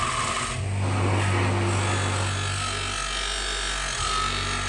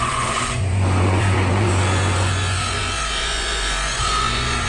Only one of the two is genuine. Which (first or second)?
first